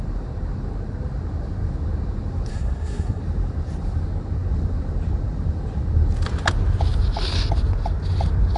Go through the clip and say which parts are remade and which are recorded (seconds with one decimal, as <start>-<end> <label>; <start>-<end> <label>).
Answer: 0.0-2.5 recorded; 2.5-3.2 remade; 3.2-8.6 recorded